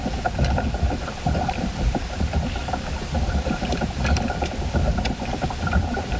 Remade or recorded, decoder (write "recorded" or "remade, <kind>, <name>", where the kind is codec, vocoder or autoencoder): remade, vocoder, BigVGAN v2